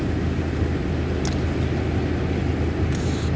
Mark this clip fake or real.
real